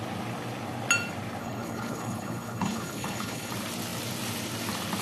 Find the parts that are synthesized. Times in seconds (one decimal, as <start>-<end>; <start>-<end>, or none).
1.4-3.5